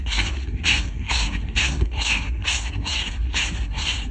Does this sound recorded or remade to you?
remade